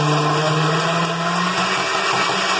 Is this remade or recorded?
recorded